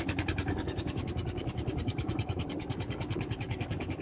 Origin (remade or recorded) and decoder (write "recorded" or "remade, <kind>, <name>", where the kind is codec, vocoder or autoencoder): remade, codec, DAC